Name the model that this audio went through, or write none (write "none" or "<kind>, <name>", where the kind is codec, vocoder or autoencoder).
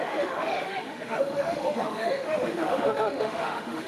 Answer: autoencoder, DAC-VAE